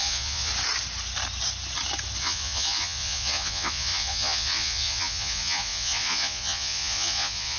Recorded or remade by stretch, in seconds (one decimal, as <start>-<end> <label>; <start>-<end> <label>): 0.0-0.5 remade; 0.5-2.2 recorded; 2.2-7.6 remade